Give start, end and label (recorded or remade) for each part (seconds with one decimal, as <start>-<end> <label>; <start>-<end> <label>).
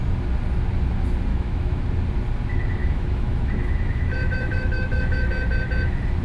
0.0-1.3 recorded; 1.3-1.8 remade; 1.8-2.8 recorded; 2.8-5.3 remade; 5.3-6.2 recorded